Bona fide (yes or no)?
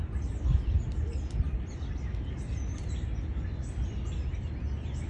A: yes